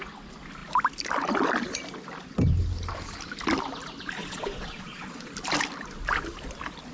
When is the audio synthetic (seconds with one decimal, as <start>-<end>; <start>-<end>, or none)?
4.2-5.3